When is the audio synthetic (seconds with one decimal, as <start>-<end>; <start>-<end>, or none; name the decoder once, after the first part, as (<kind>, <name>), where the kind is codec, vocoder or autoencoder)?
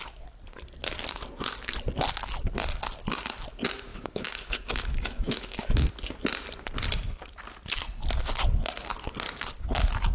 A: 3.9-5.9 (autoencoder, DAC-VAE)